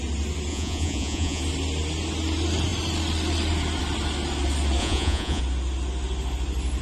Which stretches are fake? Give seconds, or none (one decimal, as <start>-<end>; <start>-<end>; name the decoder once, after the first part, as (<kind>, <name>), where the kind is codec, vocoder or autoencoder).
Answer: 0.5-1.4 (vocoder, Vocos); 4.8-5.4